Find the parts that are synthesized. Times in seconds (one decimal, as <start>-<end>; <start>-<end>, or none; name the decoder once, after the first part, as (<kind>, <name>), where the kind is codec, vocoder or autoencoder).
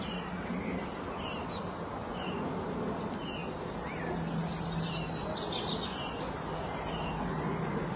2.0-2.5 (vocoder, Vocos)